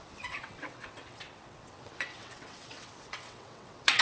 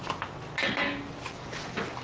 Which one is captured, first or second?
second